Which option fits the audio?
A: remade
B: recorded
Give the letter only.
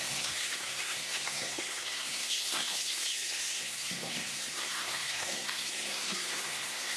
A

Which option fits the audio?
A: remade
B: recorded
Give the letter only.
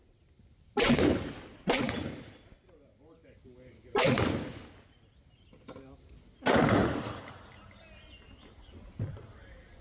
B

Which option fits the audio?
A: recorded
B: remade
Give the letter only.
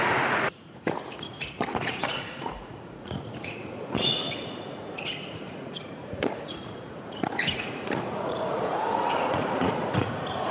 B